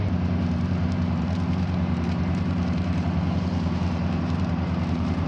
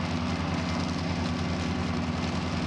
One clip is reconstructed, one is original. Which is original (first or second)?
second